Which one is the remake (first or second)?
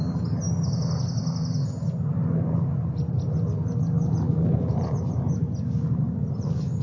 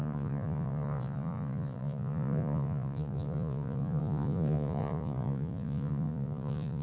second